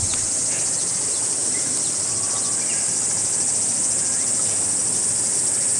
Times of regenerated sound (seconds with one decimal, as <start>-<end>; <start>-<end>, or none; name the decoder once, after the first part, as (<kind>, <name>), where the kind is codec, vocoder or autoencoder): none